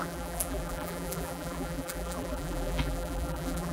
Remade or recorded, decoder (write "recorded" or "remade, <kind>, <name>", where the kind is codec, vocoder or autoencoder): remade, vocoder, BigVGAN v2